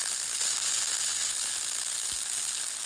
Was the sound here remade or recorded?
recorded